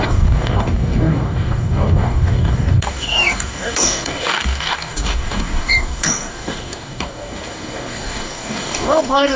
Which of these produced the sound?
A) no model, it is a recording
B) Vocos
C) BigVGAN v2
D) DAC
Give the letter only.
D